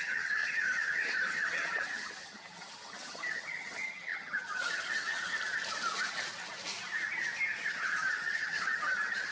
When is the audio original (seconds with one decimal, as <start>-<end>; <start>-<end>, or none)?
5.3-7.7